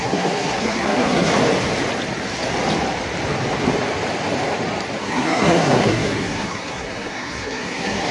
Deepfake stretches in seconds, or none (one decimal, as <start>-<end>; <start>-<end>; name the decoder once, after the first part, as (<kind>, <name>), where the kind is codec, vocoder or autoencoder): 0.0-1.3 (codec, SNAC); 5.0-8.1